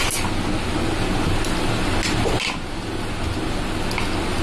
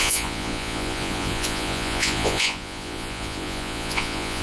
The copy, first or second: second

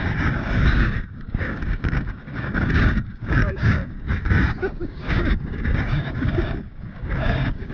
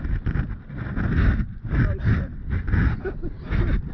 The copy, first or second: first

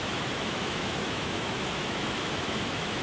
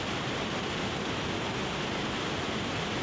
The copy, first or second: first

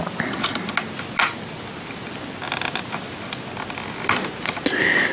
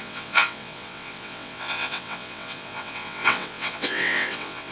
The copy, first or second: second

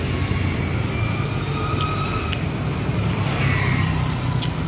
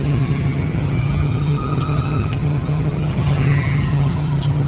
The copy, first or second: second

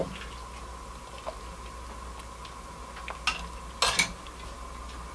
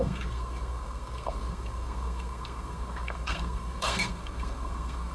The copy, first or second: second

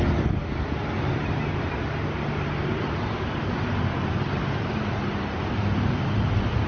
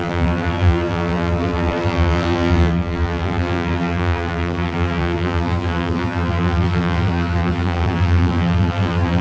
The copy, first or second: second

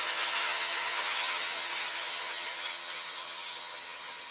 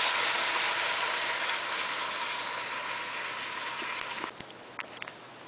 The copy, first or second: first